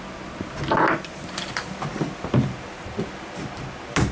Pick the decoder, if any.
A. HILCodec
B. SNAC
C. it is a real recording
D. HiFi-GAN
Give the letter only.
C